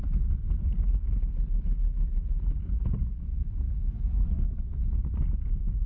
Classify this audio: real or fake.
real